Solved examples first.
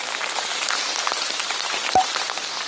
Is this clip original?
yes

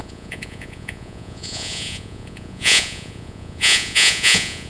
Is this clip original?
no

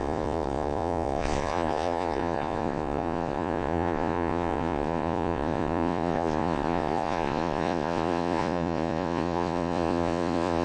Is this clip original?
no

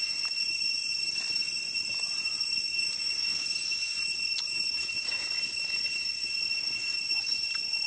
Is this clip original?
yes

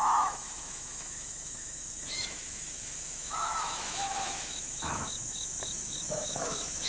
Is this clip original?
no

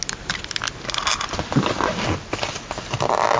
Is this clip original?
yes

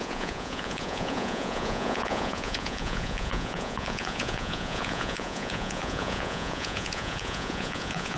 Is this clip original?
no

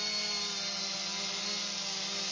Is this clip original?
yes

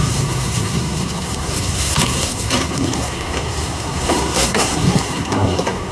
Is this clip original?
no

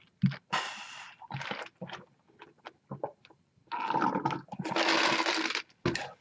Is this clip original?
yes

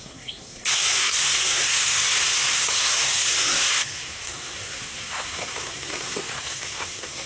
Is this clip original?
no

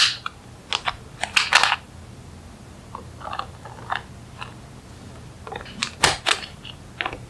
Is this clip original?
yes